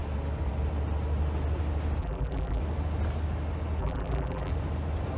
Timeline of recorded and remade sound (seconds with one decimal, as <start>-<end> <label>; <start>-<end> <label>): 0.0-2.0 recorded; 2.0-2.6 remade; 2.6-3.8 recorded; 3.8-4.5 remade; 4.5-5.2 recorded